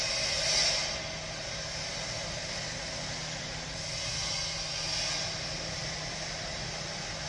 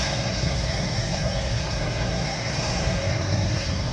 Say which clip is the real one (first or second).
first